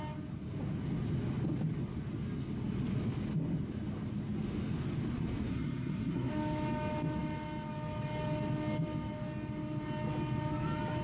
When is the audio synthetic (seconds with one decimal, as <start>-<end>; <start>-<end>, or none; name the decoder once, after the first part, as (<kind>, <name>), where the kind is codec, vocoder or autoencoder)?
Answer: 5.5-6.3 (codec, SNAC)